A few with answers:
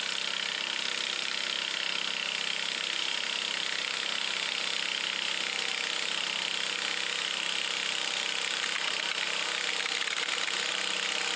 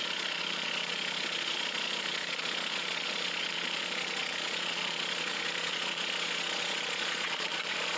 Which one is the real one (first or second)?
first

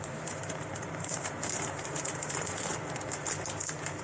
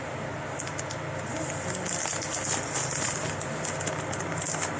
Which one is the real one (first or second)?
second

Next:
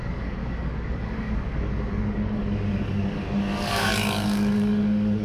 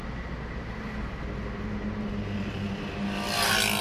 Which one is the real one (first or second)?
second